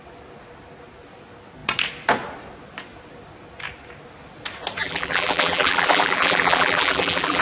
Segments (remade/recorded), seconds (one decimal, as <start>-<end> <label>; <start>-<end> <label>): 0.0-4.8 recorded; 4.8-7.4 remade